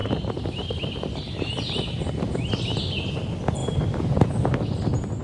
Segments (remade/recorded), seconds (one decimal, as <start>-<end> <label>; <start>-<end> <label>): 0.0-2.1 remade; 2.1-3.6 recorded; 3.6-4.2 remade; 4.2-5.2 recorded